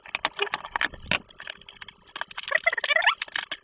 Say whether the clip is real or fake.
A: real